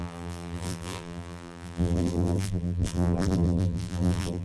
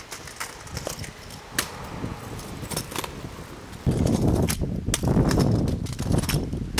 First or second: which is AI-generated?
first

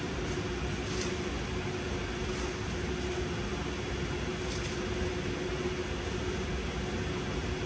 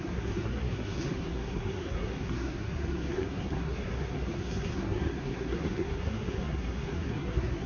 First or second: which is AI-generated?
second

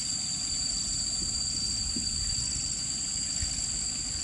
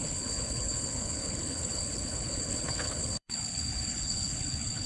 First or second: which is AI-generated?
second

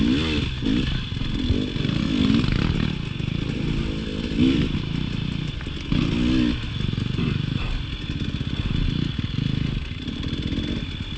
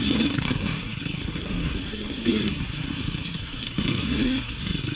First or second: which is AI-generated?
second